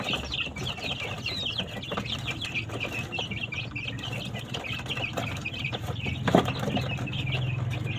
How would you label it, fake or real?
real